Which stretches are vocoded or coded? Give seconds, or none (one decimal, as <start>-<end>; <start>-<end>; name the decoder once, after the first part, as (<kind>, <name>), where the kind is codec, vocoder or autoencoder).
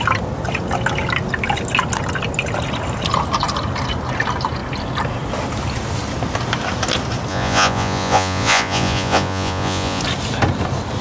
7.3-10.0 (vocoder, Vocos)